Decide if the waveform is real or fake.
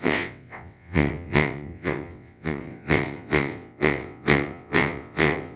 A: fake